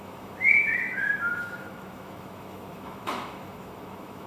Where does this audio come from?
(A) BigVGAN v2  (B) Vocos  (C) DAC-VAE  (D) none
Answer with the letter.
C